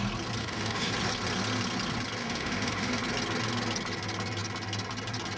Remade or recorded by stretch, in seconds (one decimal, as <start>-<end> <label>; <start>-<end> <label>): 0.0-0.4 recorded; 0.4-0.9 remade; 0.9-2.2 recorded; 2.2-3.0 remade; 3.0-5.4 recorded